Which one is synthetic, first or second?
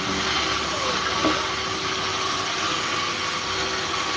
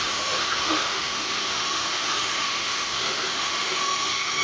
second